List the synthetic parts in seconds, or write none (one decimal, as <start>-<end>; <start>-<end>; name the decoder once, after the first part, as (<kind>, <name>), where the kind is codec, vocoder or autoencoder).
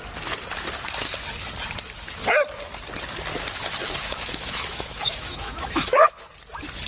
3.8-6.3 (autoencoder, DAC-VAE)